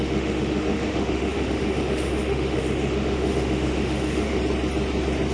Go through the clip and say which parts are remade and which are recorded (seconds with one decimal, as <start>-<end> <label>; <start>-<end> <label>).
0.0-4.4 remade; 4.4-5.3 recorded